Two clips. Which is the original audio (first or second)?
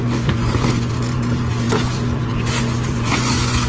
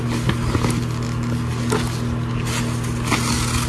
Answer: second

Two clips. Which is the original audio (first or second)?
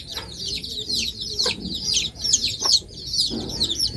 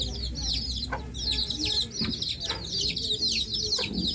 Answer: second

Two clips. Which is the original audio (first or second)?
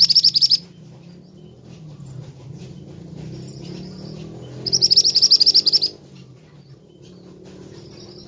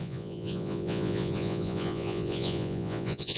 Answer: first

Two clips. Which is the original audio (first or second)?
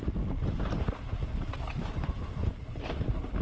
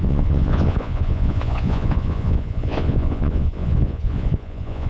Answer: first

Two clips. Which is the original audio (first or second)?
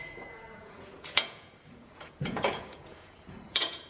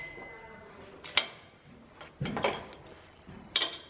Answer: second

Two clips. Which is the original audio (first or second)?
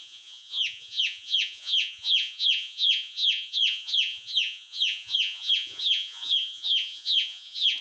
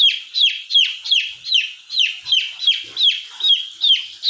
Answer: second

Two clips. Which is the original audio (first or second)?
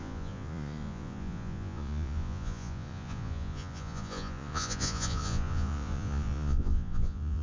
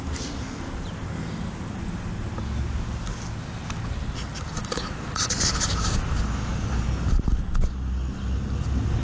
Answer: second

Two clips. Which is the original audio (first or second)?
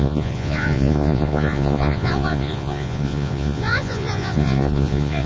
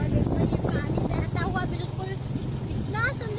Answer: second